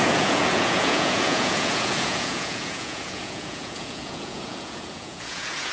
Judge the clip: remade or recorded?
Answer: remade